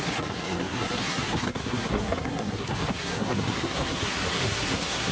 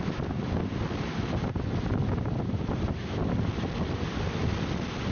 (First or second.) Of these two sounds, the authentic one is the second